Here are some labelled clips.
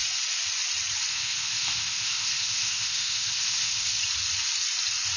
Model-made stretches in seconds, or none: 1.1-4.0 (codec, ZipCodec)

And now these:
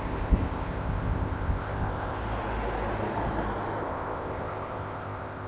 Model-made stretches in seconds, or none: 0.0-2.2 (codec, ZipCodec); 3.8-5.5

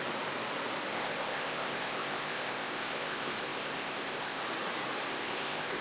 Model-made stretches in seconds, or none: 0.9-4.4 (codec, ZipCodec); 5.1-5.8

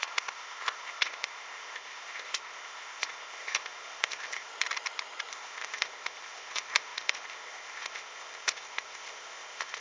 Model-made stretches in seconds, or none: 0.0-4.5 (codec, ZipCodec); 5.3-9.8

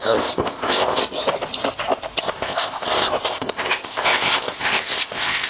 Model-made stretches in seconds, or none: 0.0-1.0 (codec, ZipCodec); 2.2-5.5

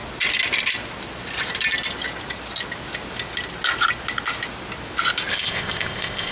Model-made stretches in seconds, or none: 5.3-6.3 (codec, ZipCodec)

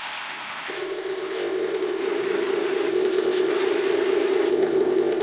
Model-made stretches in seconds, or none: 0.0-2.0 (codec, ZipCodec); 2.9-3.5; 4.5-5.2